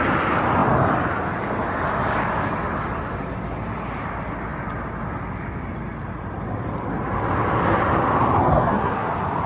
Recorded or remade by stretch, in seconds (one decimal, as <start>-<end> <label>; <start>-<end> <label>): 0.0-8.4 recorded; 8.4-9.1 remade; 9.1-9.5 recorded